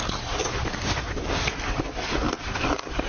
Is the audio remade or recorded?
recorded